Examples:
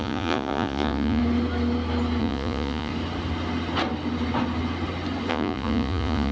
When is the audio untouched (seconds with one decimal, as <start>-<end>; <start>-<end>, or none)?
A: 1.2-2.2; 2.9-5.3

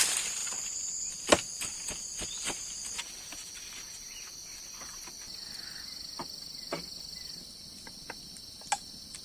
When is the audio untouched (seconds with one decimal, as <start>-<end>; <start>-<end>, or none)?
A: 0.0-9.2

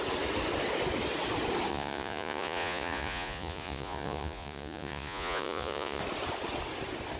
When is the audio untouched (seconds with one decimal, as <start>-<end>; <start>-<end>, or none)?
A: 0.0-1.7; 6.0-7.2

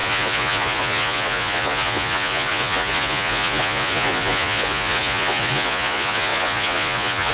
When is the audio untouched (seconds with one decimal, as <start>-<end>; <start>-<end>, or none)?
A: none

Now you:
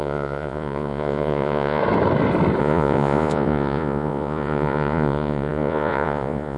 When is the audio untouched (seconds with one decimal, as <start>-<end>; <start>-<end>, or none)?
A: 1.8-2.6

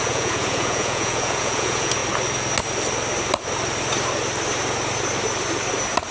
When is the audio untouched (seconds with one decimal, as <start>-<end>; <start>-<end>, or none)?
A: 2.0-6.1